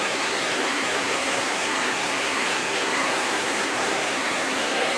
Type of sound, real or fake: fake